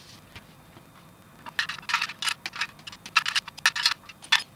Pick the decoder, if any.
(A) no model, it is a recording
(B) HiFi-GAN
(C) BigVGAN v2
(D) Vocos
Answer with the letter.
A